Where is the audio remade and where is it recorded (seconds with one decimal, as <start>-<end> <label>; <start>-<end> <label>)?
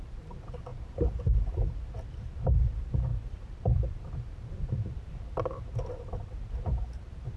0.0-7.4 remade